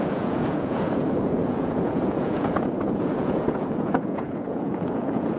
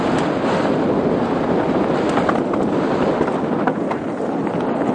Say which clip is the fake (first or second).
first